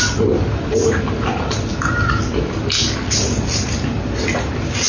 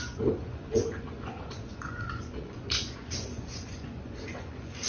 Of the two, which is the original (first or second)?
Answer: first